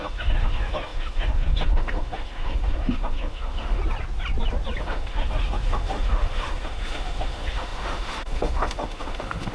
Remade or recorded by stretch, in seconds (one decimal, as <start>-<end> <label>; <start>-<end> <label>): 0.0-3.8 remade; 3.8-4.8 recorded; 4.8-9.5 remade